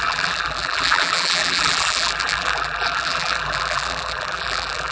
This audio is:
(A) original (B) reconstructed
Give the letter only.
B